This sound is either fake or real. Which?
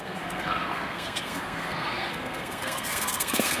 fake